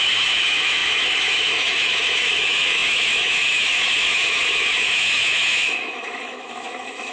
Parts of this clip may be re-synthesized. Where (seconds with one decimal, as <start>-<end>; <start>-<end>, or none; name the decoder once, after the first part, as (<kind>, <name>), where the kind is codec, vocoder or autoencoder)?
0.0-7.1 (autoencoder, DAC-VAE)